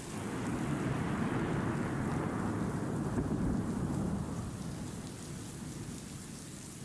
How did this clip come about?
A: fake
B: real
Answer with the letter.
B